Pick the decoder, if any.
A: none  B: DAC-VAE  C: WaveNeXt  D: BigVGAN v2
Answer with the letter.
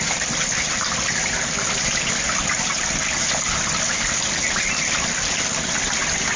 A